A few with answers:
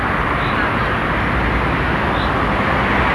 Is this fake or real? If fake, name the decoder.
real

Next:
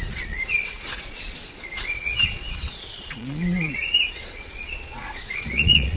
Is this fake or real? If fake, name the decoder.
fake, vocoder, Vocos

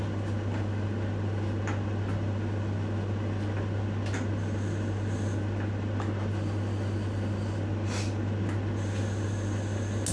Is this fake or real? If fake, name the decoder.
real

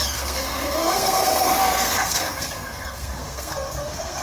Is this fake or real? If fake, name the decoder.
fake, codec, SNAC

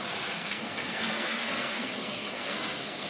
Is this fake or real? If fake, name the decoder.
fake, codec, SNAC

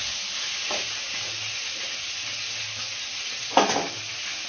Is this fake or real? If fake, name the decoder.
real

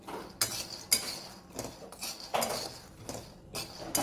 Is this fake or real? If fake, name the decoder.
real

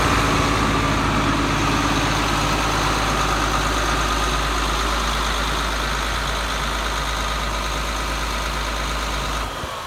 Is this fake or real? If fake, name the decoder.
real